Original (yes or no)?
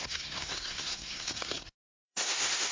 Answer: no